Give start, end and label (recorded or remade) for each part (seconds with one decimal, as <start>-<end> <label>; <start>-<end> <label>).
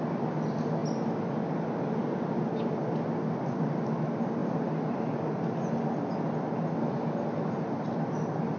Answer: 0.0-8.6 recorded